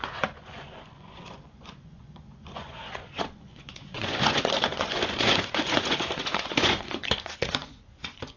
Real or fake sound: fake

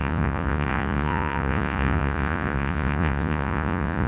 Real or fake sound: fake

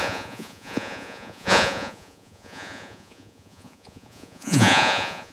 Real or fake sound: fake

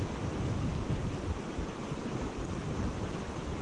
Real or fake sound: real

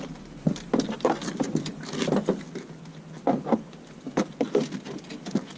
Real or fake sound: real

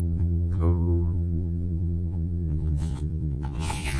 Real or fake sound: fake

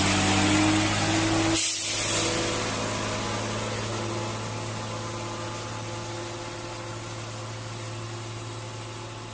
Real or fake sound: real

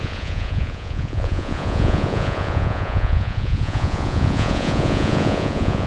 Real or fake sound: fake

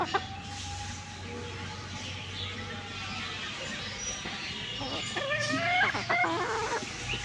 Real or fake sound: real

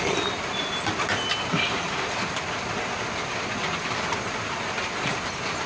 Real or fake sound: real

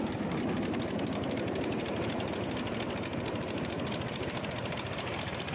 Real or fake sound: real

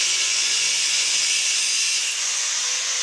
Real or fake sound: fake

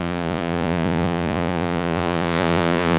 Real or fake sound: fake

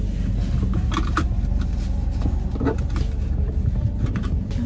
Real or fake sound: real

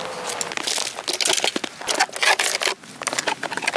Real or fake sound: real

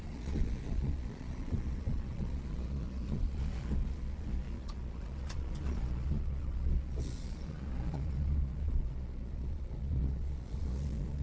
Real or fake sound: fake